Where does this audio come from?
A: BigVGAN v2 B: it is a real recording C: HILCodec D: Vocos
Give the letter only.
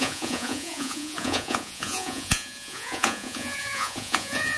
D